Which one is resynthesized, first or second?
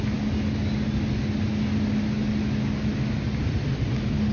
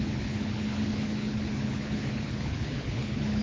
second